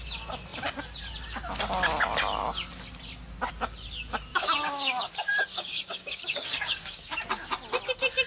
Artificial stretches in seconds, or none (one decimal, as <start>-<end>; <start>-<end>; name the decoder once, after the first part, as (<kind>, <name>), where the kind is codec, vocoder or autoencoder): 4.3-7.2 (codec, DAC)

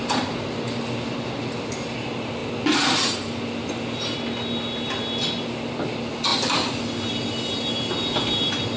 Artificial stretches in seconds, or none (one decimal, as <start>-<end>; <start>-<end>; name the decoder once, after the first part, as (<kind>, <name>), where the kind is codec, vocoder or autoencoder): none

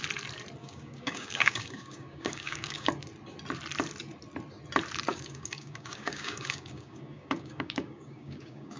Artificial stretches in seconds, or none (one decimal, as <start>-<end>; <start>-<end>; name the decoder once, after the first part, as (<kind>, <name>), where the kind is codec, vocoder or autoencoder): 0.6-2.9 (codec, DAC); 5.1-8.8